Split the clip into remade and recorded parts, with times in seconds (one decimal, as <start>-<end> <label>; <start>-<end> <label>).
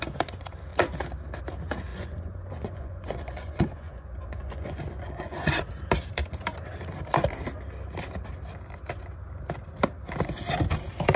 0.0-1.9 recorded; 1.9-5.6 remade; 5.6-11.2 recorded